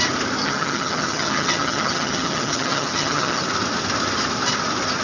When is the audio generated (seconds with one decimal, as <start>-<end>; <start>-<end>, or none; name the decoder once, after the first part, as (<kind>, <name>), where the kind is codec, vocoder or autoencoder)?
0.4-3.4 (vocoder, HiFi-GAN)